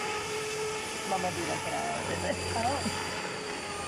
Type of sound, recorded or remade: remade